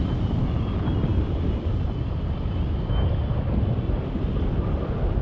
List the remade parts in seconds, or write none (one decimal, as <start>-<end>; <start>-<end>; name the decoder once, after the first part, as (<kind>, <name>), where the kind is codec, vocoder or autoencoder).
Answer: none